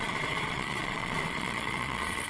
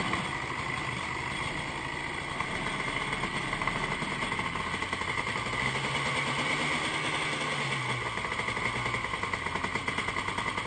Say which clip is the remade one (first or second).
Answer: first